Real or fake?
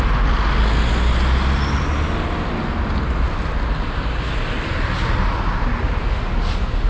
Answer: real